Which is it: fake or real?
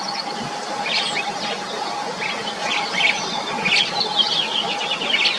real